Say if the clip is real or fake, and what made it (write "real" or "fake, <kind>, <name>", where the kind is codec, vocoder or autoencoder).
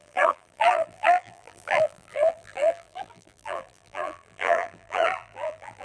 fake, vocoder, BigVGAN v2